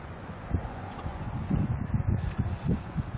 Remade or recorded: remade